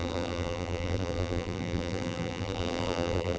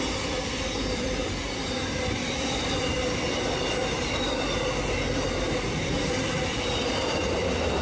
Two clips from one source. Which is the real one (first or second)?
second